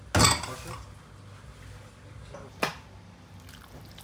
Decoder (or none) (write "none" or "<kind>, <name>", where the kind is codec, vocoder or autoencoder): none